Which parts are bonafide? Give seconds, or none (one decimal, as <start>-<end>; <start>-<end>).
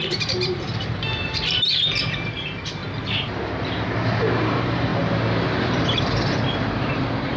2.8-4.2; 4.9-5.6